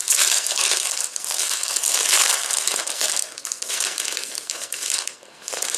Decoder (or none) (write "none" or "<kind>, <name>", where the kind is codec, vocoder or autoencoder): codec, SNAC